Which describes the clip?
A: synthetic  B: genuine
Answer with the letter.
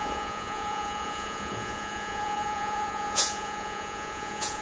A